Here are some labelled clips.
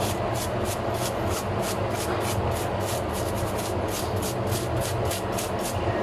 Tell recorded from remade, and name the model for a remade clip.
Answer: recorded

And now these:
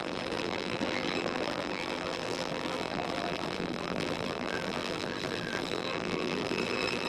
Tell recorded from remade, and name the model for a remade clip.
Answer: remade, vocoder, BigVGAN v2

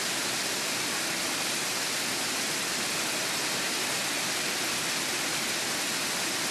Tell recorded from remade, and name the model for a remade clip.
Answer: recorded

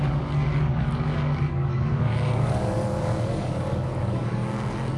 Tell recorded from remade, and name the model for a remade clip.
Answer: remade, codec, DAC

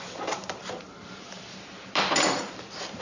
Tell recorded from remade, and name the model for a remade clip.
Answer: remade, vocoder, BigVGAN v2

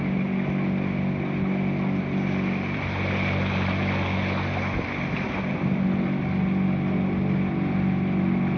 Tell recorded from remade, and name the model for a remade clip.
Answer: recorded